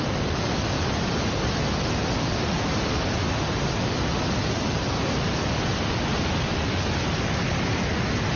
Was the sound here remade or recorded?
recorded